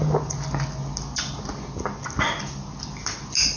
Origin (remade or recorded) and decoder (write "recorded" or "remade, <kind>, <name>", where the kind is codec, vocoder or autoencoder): recorded